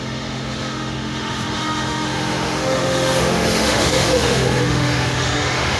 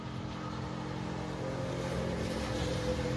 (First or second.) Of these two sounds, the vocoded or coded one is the first